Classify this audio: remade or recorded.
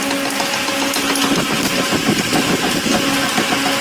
recorded